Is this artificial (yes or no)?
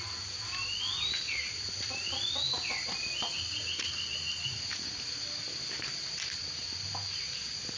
no